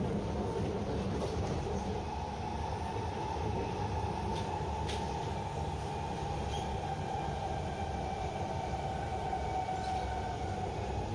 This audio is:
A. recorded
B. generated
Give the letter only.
A